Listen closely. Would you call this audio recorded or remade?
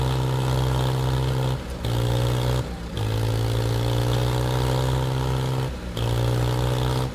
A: recorded